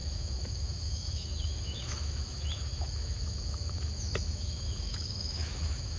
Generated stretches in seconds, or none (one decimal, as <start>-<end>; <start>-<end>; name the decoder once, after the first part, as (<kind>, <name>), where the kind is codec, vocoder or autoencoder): 0.0-6.0 (autoencoder, DAC-VAE)